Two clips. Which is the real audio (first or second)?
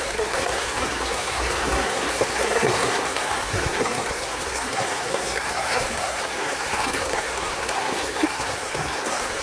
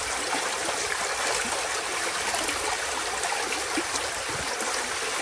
second